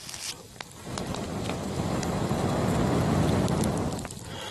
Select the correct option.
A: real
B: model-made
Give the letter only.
B